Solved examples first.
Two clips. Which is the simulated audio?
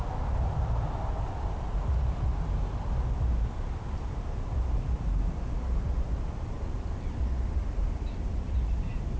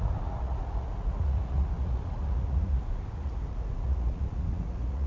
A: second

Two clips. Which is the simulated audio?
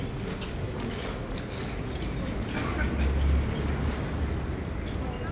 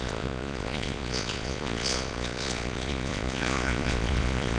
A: second